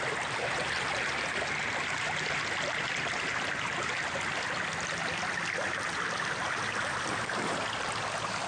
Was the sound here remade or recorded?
recorded